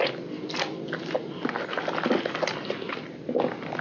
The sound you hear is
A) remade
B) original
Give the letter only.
B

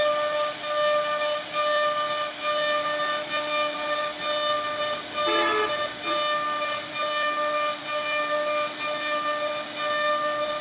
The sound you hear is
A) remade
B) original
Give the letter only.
B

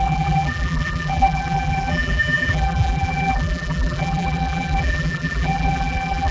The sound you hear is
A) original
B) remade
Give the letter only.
B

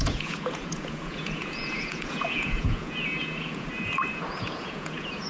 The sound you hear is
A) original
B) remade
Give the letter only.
B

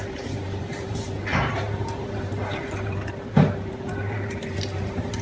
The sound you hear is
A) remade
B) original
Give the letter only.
A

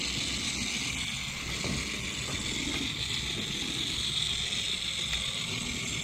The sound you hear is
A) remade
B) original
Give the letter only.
B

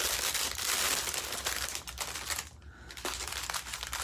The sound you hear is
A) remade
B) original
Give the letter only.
B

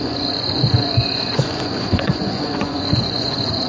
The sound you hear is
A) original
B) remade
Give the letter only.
B